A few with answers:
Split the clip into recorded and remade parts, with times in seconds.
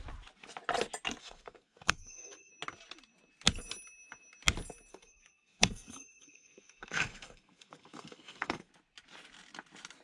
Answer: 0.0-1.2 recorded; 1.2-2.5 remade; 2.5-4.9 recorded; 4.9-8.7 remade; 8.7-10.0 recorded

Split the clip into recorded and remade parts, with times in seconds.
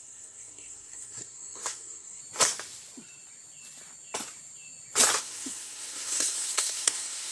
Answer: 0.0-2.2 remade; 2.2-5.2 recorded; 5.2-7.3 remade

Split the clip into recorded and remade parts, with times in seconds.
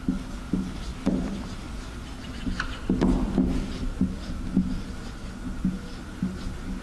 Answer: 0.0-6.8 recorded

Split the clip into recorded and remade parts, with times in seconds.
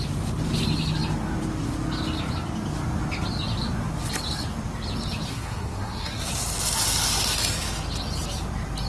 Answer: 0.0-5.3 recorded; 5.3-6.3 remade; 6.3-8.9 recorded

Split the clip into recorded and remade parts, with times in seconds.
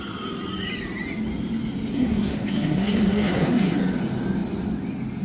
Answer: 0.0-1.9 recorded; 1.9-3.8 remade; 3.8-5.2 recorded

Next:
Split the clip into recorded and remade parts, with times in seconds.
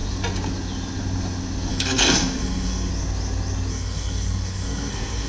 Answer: 0.0-1.7 recorded; 1.7-2.9 remade; 2.9-3.7 recorded; 3.7-5.3 remade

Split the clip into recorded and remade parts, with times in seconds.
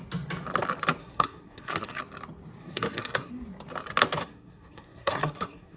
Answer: 0.0-1.0 recorded; 1.0-2.0 remade; 2.0-2.6 recorded; 2.6-3.3 remade; 3.3-4.2 recorded; 4.2-5.8 remade